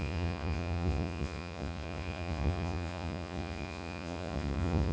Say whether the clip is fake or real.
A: fake